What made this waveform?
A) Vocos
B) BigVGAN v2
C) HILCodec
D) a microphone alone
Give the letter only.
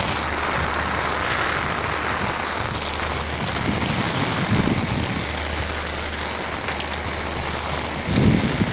D